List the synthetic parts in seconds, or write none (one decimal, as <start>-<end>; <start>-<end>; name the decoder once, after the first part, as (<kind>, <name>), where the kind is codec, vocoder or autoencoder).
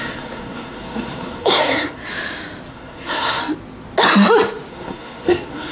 0.0-2.0 (codec, SNAC); 2.7-3.4; 4.7-5.7